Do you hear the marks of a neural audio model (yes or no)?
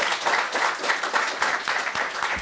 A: no